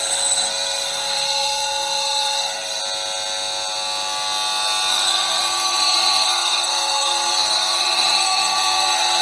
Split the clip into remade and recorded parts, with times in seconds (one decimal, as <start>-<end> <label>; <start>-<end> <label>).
0.0-2.8 remade; 2.8-4.9 recorded; 4.9-9.2 remade